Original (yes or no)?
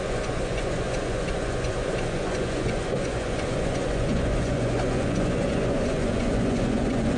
no